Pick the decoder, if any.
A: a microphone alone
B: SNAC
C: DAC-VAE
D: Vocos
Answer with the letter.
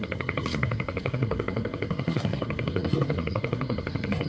B